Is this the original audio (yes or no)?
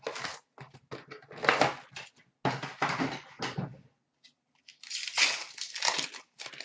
yes